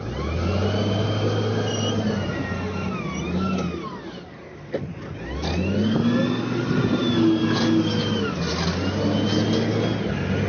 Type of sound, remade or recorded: recorded